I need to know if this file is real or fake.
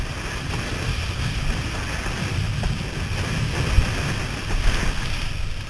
real